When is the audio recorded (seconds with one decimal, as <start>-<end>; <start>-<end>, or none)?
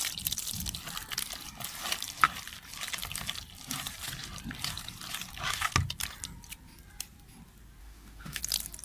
0.0-7.8; 8.4-8.8